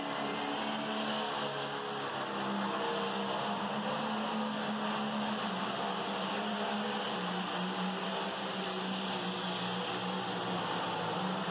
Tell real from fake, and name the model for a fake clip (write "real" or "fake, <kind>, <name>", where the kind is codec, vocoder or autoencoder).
real